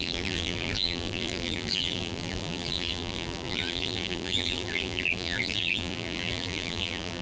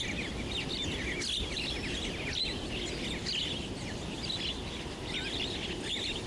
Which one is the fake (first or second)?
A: first